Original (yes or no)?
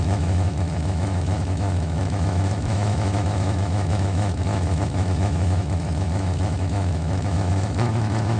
no